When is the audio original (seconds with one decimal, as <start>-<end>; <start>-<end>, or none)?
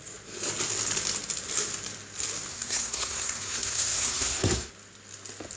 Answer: 0.0-2.5; 4.7-5.6